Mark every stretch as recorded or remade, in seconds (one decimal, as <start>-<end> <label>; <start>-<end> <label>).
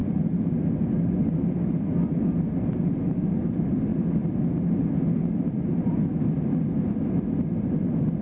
0.0-2.2 recorded; 2.2-3.9 remade; 3.9-4.9 recorded; 4.9-6.1 remade; 6.1-7.4 recorded; 7.4-8.2 remade